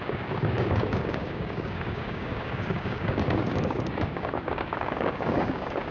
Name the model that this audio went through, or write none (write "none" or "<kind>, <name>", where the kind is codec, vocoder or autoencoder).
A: codec, DAC